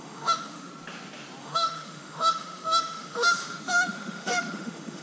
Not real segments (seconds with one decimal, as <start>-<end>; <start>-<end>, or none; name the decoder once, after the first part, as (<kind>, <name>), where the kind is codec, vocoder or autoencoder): 0.0-0.7 (autoencoder, DAC-VAE); 1.4-5.0

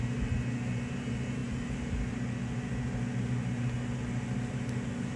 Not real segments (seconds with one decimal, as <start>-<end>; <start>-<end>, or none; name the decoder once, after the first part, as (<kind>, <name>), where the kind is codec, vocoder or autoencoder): none

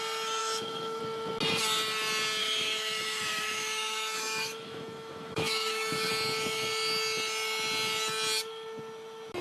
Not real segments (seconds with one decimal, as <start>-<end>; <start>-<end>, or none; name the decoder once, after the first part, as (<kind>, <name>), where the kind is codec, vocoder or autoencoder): 0.4-1.0 (autoencoder, DAC-VAE); 2.4-6.1

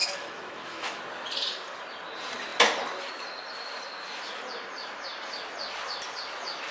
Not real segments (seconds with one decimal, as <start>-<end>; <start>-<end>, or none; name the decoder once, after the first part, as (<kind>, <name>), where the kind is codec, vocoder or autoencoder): 0.0-1.0 (autoencoder, DAC-VAE)

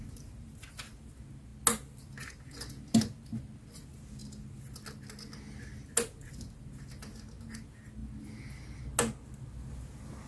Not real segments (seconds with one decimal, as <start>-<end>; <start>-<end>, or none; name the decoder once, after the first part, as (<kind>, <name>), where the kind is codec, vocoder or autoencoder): none

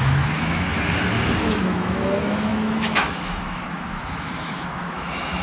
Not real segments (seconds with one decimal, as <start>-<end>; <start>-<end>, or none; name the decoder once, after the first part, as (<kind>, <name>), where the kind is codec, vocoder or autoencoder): 0.0-0.7 (autoencoder, DAC-VAE); 1.4-5.4